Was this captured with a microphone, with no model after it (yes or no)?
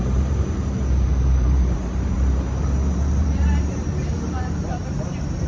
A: no